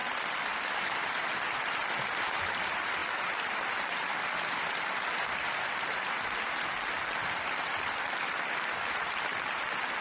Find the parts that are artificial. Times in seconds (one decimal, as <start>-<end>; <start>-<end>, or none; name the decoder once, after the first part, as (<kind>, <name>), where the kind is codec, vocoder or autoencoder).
0.0-2.2 (vocoder, BigVGAN v2)